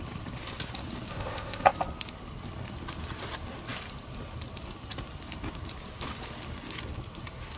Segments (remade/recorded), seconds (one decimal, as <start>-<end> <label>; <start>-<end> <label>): 0.0-1.1 recorded; 1.1-1.7 remade; 1.7-7.6 recorded